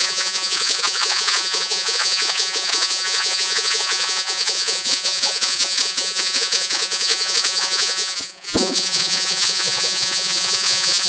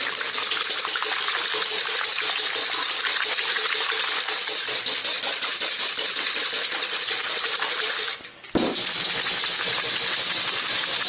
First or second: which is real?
second